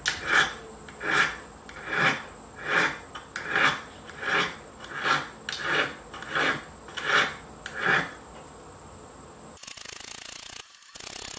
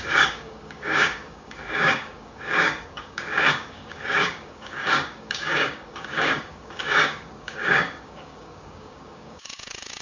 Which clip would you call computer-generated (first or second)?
second